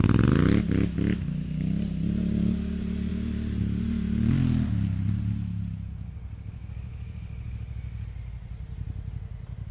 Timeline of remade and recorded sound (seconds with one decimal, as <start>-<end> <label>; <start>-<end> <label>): 0.0-9.7 recorded